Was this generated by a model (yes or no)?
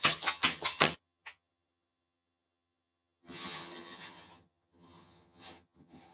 yes